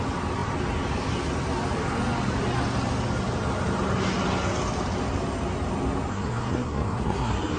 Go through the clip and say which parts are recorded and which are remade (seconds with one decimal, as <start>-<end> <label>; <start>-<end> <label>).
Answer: 0.0-6.1 recorded; 6.1-7.6 remade